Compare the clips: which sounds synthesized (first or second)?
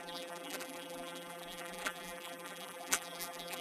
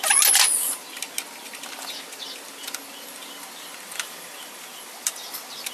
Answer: first